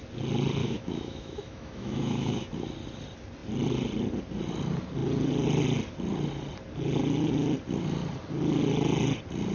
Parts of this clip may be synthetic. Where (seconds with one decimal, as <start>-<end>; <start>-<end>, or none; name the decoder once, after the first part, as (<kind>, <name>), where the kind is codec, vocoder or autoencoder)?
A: 0.6-2.5 (autoencoder, DAC-VAE)